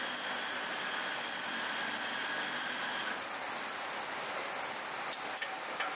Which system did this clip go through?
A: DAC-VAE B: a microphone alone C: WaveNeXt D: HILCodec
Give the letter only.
B